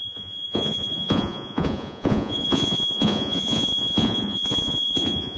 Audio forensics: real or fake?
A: fake